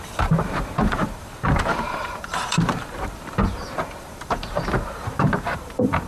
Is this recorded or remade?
remade